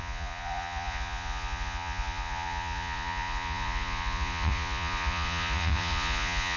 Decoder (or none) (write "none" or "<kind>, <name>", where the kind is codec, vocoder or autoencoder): vocoder, Vocos